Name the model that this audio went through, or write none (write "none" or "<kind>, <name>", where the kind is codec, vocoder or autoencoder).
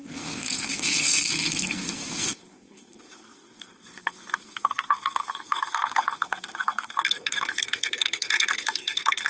codec, SNAC